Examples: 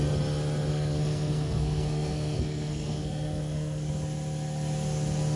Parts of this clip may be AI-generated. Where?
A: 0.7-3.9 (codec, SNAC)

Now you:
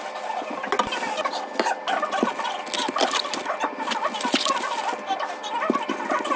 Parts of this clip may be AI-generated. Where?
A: none

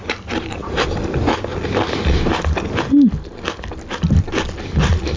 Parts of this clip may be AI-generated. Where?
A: none